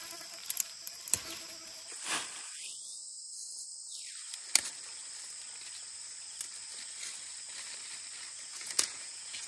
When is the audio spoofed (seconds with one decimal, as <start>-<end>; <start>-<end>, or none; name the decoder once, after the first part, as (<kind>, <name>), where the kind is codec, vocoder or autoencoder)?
8.5-9.5 (vocoder, Vocos)